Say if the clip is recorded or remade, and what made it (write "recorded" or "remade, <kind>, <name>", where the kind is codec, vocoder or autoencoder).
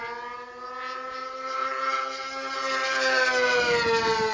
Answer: recorded